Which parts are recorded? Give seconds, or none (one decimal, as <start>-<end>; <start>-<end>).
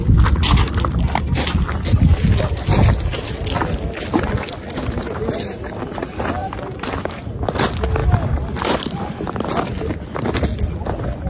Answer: 0.0-6.4; 7.3-11.3